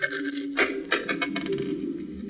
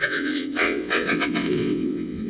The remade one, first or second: second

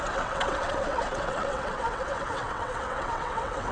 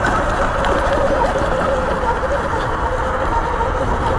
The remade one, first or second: first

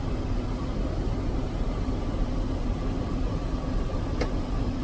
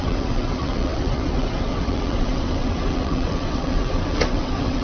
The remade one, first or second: second